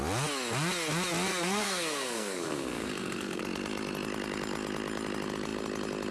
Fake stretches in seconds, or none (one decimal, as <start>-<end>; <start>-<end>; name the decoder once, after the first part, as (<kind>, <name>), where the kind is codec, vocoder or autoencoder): 1.3-3.4 (codec, SNAC)